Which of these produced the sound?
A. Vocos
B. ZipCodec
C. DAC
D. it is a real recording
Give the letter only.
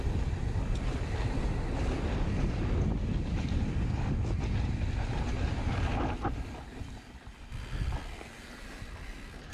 D